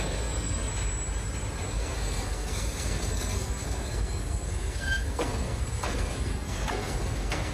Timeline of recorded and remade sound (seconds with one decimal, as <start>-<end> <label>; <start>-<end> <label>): 0.0-0.7 remade; 0.7-1.7 recorded; 1.7-7.5 remade